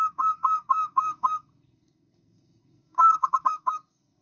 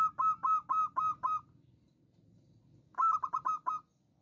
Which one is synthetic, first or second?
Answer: first